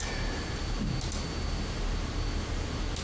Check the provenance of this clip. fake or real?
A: real